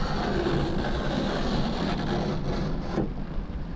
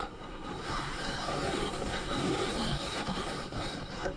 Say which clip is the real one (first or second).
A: first